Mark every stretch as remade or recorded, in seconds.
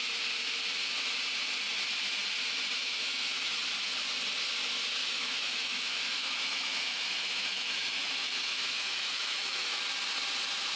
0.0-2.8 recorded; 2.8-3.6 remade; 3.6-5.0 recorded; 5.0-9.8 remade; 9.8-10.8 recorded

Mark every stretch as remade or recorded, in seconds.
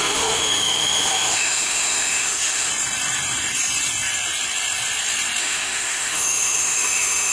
0.0-2.7 remade; 2.7-5.4 recorded; 5.4-7.3 remade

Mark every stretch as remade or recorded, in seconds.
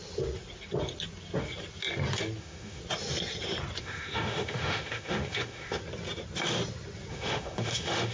0.0-2.4 recorded; 2.4-2.8 remade; 2.8-3.8 recorded; 3.8-5.8 remade; 5.8-7.1 recorded; 7.1-8.1 remade